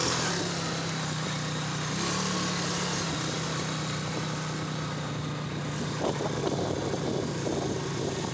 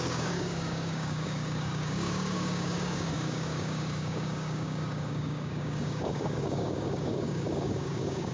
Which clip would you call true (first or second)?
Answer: first